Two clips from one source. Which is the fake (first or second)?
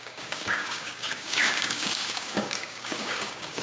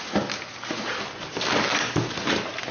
first